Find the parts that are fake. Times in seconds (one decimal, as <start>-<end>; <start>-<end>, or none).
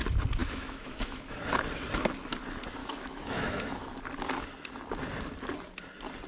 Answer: 0.4-1.4; 2.8-4.0